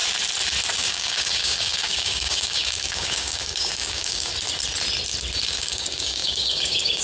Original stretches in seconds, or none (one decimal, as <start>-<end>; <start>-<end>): 0.0-0.7; 4.3-5.5